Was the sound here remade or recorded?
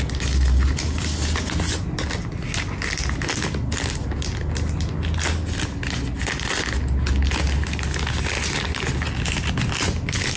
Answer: recorded